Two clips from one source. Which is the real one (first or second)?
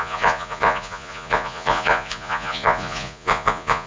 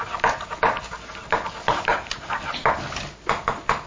second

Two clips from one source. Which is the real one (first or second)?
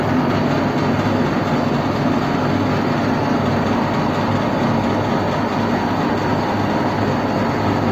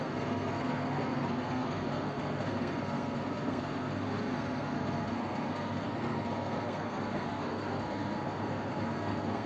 first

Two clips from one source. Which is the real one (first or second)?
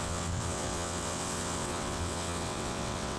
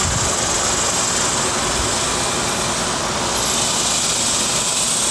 second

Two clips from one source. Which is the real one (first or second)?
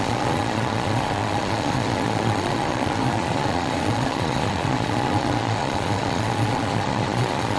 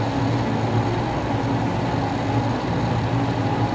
second